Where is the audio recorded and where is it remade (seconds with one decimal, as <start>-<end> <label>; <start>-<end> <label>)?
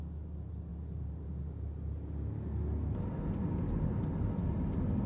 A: 0.0-5.1 recorded